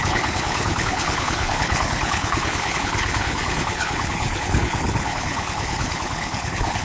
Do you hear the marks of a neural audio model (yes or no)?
yes